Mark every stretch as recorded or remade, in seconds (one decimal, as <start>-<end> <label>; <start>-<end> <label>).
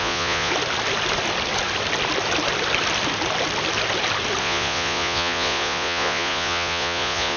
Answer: 0.0-0.5 remade; 0.5-4.4 recorded; 4.4-7.4 remade